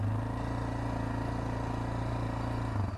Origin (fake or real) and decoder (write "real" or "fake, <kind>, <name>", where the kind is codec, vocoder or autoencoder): real